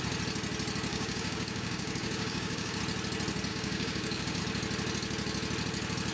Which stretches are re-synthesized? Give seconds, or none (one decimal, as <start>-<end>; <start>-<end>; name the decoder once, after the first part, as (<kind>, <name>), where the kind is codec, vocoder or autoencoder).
0.9-2.8 (codec, DAC); 3.5-4.4